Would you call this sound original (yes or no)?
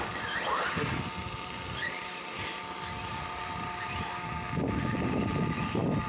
yes